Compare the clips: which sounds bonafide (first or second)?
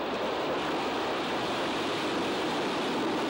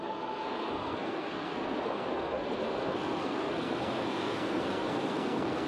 first